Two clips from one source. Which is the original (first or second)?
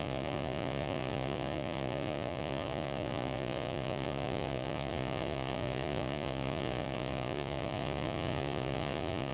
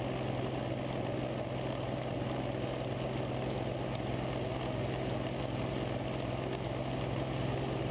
second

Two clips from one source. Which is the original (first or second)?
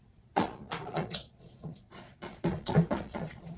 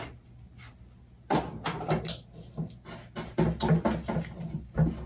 second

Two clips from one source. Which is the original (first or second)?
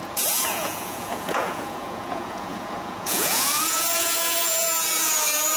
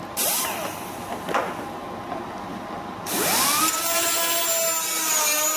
second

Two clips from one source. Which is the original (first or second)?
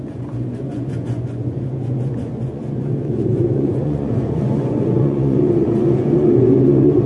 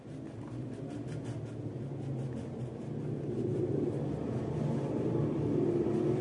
second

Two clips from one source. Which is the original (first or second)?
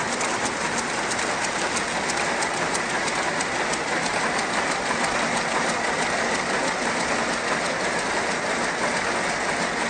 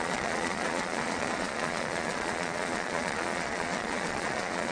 first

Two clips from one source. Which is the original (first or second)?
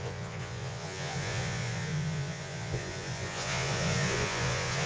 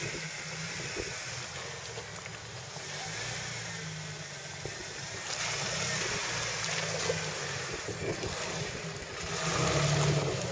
second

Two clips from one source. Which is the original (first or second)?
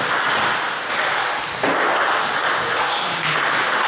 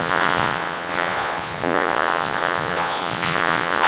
first